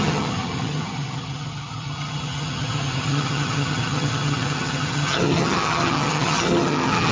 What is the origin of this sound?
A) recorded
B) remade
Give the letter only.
B